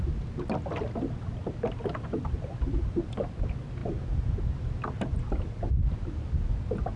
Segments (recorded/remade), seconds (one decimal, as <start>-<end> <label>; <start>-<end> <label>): 0.0-7.0 recorded

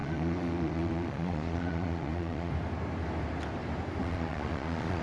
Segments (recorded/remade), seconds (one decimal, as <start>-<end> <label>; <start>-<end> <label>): 0.0-2.5 remade; 2.5-4.0 recorded; 4.0-5.0 remade